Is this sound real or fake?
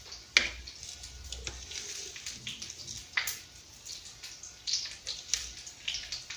real